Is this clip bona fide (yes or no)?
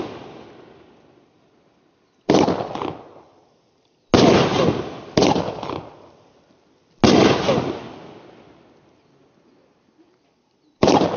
yes